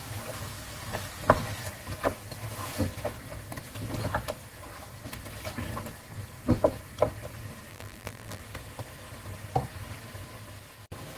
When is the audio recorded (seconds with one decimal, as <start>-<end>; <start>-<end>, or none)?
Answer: 0.0-7.7; 8.4-11.2